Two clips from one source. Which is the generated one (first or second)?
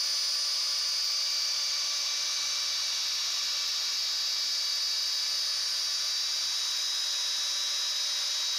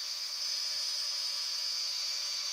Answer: second